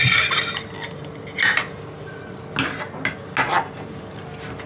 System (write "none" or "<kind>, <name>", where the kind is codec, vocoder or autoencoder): none